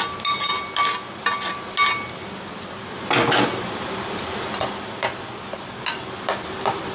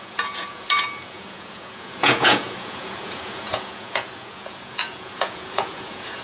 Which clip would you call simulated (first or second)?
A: second